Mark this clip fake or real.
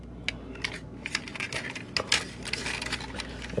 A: real